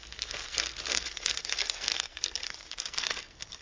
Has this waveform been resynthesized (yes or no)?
yes